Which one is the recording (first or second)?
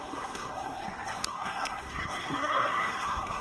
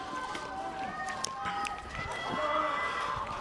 second